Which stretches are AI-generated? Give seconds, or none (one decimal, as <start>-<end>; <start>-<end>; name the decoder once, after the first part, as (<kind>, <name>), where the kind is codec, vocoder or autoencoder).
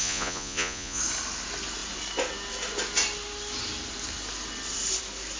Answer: 0.0-1.0 (vocoder, Vocos)